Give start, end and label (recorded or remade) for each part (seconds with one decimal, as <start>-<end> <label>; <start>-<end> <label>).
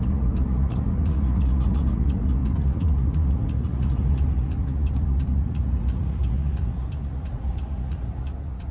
0.0-8.7 remade